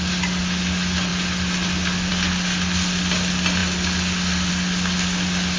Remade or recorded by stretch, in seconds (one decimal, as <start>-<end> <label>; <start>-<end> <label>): 0.0-5.6 recorded

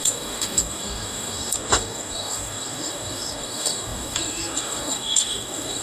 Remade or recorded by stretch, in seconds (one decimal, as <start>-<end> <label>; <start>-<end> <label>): 0.0-5.8 remade

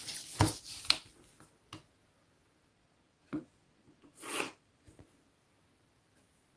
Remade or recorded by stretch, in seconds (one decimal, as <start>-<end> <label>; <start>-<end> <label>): 0.0-2.7 recorded; 2.7-4.9 remade; 4.9-6.6 recorded

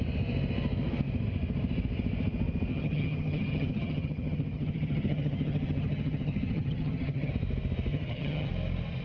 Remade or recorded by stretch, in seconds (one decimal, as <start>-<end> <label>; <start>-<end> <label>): 0.0-2.7 recorded; 2.7-7.3 remade; 7.3-7.9 recorded; 7.9-8.5 remade; 8.5-9.0 recorded

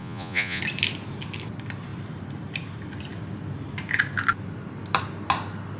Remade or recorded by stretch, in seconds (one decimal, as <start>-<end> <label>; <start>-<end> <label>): 0.0-0.6 remade; 0.6-5.8 recorded

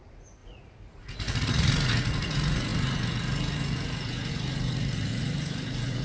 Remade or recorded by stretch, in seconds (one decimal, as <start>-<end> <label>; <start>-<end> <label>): 0.0-6.0 remade

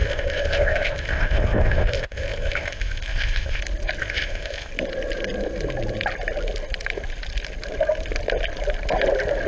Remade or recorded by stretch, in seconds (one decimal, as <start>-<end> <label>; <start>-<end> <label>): 0.0-3.6 remade; 3.6-4.0 recorded; 4.0-4.7 remade; 4.7-9.5 recorded

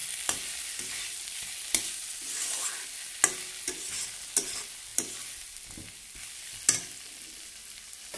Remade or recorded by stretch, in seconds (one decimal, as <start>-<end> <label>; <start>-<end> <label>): 0.0-8.2 recorded